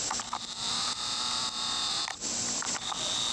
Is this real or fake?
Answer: real